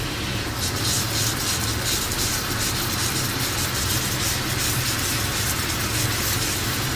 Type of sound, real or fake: real